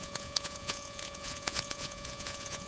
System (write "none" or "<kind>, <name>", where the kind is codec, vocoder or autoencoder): vocoder, Vocos